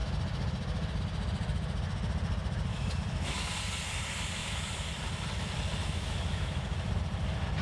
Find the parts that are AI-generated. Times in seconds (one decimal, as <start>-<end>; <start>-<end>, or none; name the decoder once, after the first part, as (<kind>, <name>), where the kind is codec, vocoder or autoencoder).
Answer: 2.7-3.5 (autoencoder, DAC-VAE); 4.4-4.9; 5.8-6.9